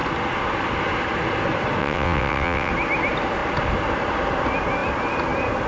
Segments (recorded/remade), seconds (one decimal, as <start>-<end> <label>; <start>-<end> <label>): 0.0-1.8 recorded; 1.8-2.7 remade; 2.7-5.7 recorded